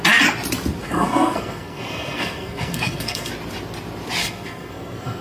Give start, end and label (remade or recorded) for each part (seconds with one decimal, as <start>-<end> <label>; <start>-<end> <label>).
0.0-0.8 recorded; 0.8-3.3 remade; 3.3-4.2 recorded; 4.2-5.2 remade